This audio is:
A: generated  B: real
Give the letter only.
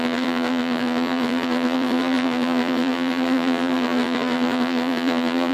A